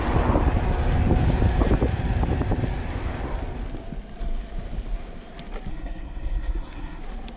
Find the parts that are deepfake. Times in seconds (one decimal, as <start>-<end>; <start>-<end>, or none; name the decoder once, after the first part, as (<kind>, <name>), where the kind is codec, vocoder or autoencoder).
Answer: 5.7-7.0 (codec, SNAC)